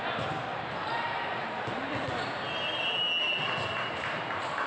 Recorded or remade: recorded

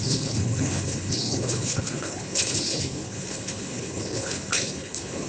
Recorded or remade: remade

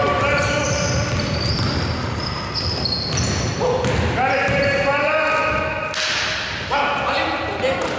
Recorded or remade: recorded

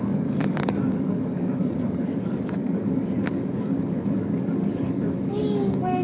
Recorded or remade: remade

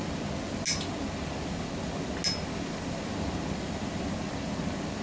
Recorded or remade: recorded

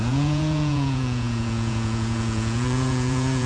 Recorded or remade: remade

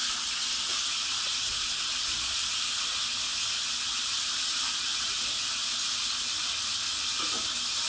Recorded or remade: recorded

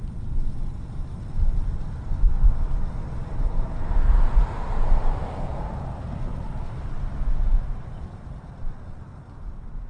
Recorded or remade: recorded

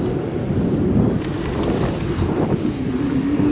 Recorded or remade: recorded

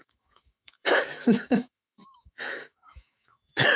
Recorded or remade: remade